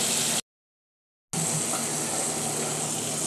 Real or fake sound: real